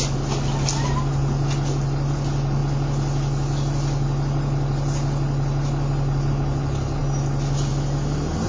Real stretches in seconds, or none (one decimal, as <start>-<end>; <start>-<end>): 0.0-8.5